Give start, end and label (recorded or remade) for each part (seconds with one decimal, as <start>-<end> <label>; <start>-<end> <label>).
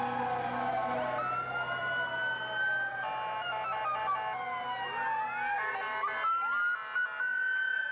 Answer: 0.0-7.9 recorded